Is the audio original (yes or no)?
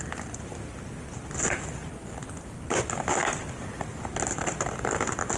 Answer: yes